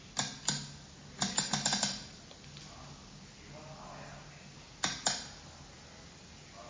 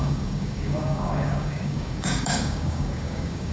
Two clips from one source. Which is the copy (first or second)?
second